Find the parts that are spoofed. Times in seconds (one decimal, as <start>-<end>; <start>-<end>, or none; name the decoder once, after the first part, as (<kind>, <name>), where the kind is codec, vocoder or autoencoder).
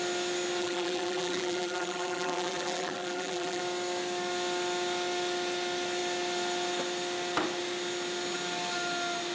0.6-3.6 (vocoder, BigVGAN v2)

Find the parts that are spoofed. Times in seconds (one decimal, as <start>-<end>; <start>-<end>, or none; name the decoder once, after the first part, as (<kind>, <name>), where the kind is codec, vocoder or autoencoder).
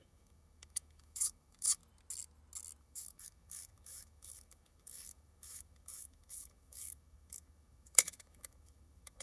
0.0-1.8 (autoencoder, DAC-VAE); 2.8-9.2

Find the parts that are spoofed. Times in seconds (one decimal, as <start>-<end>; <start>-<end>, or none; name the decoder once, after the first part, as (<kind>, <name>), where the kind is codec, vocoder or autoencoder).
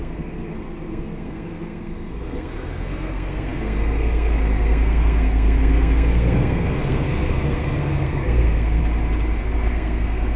0.0-8.8 (codec, SNAC); 9.4-10.4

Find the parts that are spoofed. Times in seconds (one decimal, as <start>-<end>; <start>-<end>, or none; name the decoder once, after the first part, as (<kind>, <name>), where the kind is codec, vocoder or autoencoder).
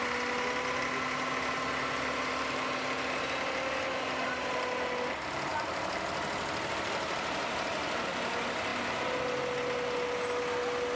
none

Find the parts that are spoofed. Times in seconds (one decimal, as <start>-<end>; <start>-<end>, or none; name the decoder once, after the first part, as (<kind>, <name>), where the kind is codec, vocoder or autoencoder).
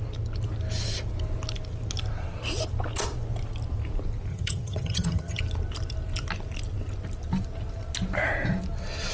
4.3-5.4 (vocoder, HiFi-GAN)